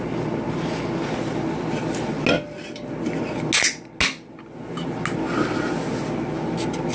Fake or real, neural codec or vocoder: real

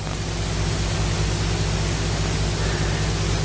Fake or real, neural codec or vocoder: real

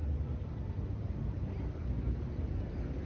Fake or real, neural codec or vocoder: real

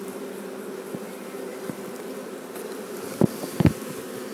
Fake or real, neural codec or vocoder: real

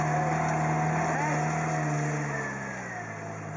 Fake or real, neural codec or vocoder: real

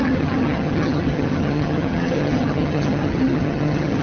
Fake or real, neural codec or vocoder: fake, vocoder, HiFi-GAN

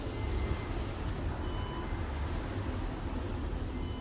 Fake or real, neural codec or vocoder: real